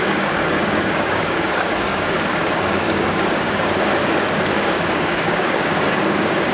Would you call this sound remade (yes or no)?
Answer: yes